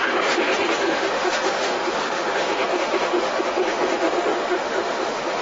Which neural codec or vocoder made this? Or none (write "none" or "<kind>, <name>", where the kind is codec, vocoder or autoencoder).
autoencoder, DAC-VAE